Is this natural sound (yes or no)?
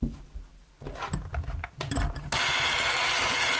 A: yes